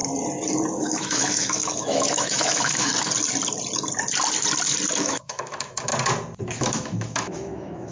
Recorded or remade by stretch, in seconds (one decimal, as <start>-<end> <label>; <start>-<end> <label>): 0.0-0.8 recorded; 0.8-2.9 remade; 2.9-5.0 recorded; 5.0-5.9 remade; 5.9-6.4 recorded; 6.4-7.9 remade